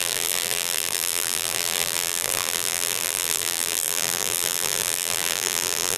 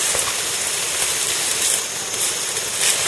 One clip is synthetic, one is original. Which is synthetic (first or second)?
first